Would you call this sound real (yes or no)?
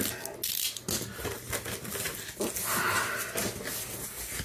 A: yes